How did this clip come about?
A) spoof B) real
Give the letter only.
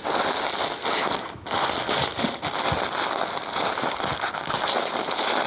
B